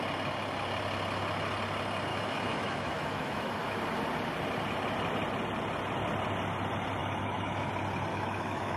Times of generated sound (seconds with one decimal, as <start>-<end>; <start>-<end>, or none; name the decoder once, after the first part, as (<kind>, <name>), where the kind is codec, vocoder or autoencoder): 2.1-3.8 (autoencoder, DAC-VAE); 7.0-7.7; 8.1-8.8